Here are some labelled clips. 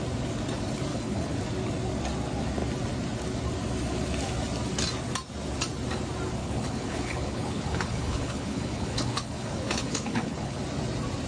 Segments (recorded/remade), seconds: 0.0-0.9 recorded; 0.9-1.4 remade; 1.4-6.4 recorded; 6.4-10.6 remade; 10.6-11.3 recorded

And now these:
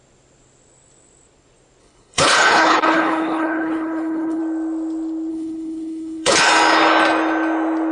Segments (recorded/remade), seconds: 0.0-1.8 recorded; 1.8-4.4 remade; 4.4-5.3 recorded; 5.3-6.5 remade; 6.5-7.9 recorded